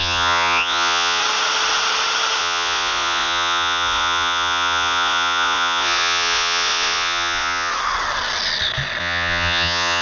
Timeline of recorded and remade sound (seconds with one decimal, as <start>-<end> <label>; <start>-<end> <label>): 0.0-1.2 remade; 1.2-2.4 recorded; 2.4-7.7 remade; 7.7-9.0 recorded; 9.0-10.0 remade